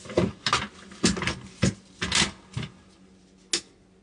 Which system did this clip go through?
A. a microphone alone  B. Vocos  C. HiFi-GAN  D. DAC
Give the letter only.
A